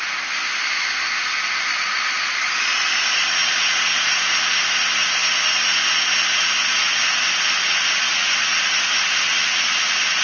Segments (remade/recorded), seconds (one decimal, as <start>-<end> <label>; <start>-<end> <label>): 0.0-10.2 recorded